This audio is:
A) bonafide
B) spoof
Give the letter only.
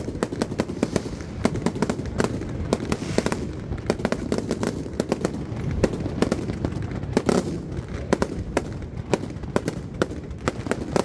A